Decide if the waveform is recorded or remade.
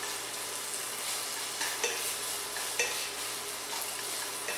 recorded